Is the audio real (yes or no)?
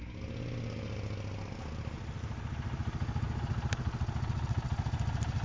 yes